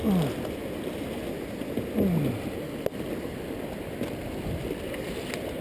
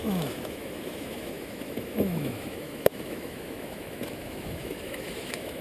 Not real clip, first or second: second